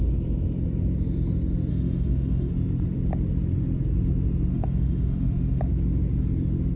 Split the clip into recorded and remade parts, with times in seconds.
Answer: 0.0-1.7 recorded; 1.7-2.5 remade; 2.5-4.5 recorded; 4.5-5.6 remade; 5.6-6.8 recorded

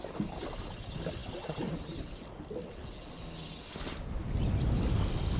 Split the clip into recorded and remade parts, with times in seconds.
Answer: 0.0-5.4 recorded

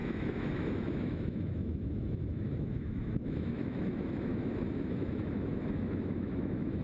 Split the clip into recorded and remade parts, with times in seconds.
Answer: 0.0-6.8 remade

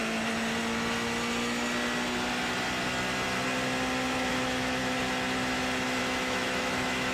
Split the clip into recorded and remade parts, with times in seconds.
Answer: 0.0-4.3 recorded; 4.3-4.8 remade; 4.8-6.0 recorded; 6.0-7.1 remade

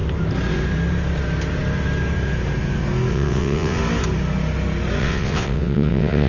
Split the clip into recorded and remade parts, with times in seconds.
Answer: 0.0-3.1 recorded; 3.1-3.8 remade; 3.8-5.0 recorded; 5.0-6.3 remade

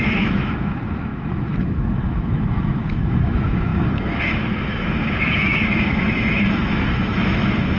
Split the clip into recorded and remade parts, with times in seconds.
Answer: 0.0-7.8 remade